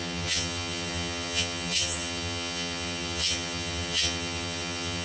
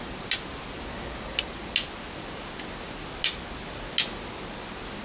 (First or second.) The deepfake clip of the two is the first